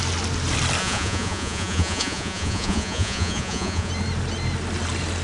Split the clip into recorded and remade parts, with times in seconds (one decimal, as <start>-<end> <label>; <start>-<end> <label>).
0.0-0.8 recorded; 0.8-3.9 remade; 3.9-5.2 recorded